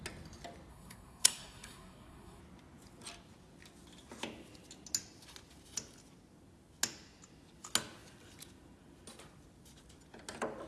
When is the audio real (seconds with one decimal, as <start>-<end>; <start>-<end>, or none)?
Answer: 0.0-0.7; 2.4-10.7